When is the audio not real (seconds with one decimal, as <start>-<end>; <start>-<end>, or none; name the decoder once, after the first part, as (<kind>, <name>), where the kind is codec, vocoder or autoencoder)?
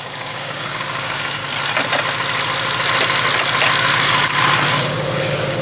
0.0-1.4 (codec, DAC); 4.8-5.6